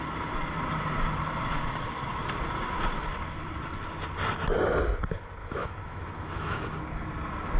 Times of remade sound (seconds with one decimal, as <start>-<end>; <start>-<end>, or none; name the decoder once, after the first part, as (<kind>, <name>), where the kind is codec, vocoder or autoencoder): 5.4-6.6 (autoencoder, DAC-VAE)

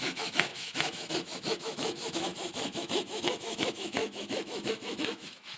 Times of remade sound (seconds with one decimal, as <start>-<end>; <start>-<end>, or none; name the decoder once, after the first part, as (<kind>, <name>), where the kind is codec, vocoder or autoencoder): 0.0-5.6 (autoencoder, DAC-VAE)

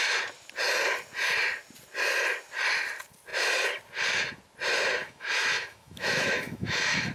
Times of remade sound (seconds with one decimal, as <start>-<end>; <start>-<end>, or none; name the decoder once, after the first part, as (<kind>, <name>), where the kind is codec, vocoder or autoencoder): 5.0-7.1 (autoencoder, DAC-VAE)

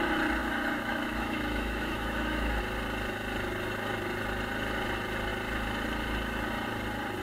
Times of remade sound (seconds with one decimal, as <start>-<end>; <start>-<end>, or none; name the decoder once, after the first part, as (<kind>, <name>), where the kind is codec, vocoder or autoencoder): 0.4-2.6 (autoencoder, DAC-VAE)

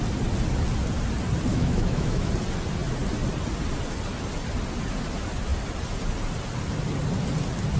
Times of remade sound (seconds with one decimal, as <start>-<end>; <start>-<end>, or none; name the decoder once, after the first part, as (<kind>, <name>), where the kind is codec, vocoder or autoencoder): 1.5-2.3 (autoencoder, DAC-VAE)

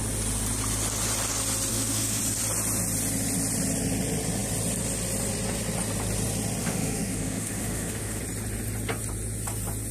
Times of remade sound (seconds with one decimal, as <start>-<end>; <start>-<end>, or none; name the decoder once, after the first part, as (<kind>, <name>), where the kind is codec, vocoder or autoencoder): 1.7-2.2 (autoencoder, DAC-VAE); 6.6-8.2